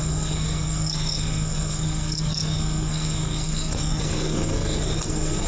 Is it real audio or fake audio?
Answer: fake